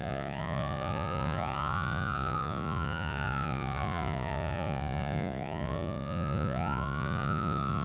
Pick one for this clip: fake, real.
fake